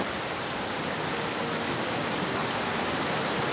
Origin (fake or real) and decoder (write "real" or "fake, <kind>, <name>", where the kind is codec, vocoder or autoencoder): real